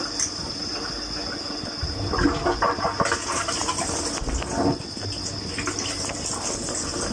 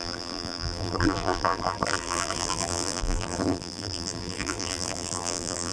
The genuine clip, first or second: first